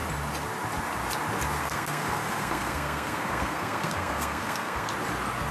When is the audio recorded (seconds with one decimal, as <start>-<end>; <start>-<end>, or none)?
0.0-1.6; 4.9-5.5

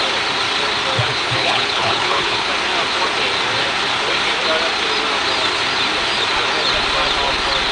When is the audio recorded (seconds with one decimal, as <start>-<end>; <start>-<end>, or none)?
0.0-1.1; 2.5-7.7

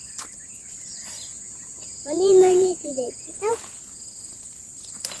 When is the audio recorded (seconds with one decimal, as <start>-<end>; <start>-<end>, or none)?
0.0-1.3; 4.4-5.2

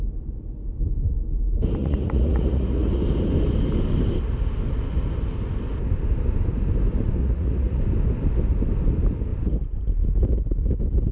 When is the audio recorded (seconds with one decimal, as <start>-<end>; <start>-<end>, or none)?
0.0-1.8; 3.0-7.2; 7.8-11.1

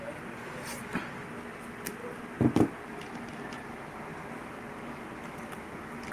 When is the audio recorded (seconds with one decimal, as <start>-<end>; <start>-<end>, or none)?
0.0-6.1

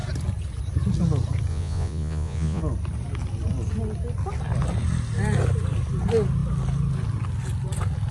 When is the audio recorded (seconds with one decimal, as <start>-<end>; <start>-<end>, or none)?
0.0-1.5; 2.6-8.1

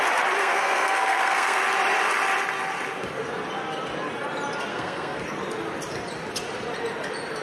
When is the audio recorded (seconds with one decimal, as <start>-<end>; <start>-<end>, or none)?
0.0-0.4; 1.6-4.7; 5.2-7.4

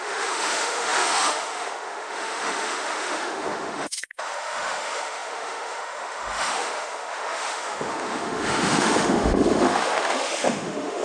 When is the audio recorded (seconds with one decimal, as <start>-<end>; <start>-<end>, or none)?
none